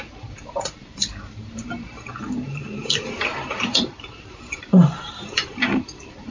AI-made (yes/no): yes